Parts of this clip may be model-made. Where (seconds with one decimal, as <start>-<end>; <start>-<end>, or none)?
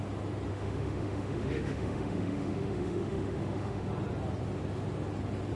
0.5-3.9